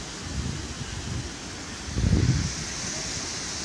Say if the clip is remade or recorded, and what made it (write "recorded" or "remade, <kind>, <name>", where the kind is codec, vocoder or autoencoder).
recorded